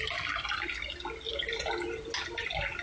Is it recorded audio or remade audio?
recorded